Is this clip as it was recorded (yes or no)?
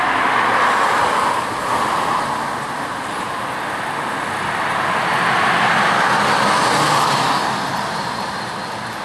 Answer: yes